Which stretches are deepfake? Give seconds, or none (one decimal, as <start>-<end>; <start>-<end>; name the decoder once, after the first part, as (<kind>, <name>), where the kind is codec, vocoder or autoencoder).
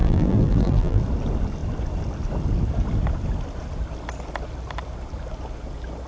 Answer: 0.0-1.0 (vocoder, BigVGAN v2)